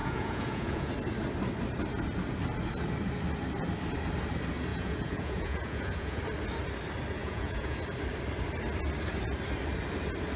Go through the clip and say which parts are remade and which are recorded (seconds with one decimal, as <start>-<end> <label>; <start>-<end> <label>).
0.0-0.9 remade; 0.9-4.7 recorded; 4.7-6.2 remade; 6.2-7.2 recorded; 7.2-7.8 remade; 7.8-10.4 recorded